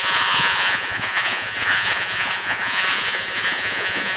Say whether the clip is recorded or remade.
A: remade